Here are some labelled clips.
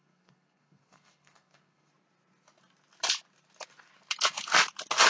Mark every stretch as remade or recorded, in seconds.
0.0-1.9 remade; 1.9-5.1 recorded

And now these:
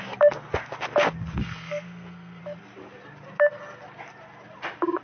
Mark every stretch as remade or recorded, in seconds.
0.0-1.4 recorded; 1.4-2.4 remade; 2.4-5.0 recorded

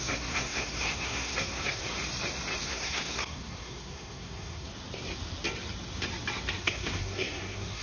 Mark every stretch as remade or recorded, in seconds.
0.0-1.8 remade; 1.8-2.6 recorded; 2.6-4.7 remade; 4.7-6.6 recorded; 6.6-7.8 remade

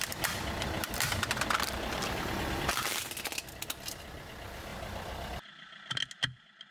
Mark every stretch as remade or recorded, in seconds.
0.0-6.7 recorded

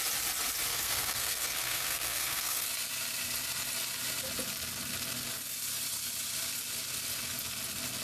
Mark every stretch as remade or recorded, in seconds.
0.0-0.7 recorded; 0.7-2.7 remade; 2.7-8.0 recorded